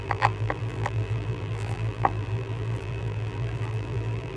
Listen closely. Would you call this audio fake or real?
fake